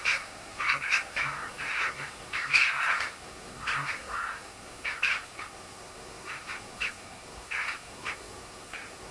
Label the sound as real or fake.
fake